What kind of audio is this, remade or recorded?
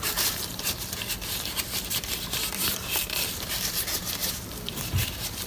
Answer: remade